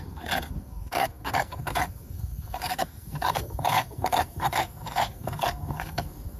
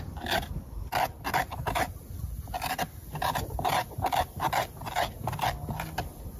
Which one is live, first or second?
second